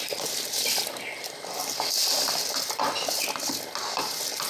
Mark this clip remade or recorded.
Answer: remade